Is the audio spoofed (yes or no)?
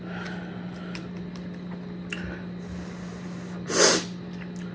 no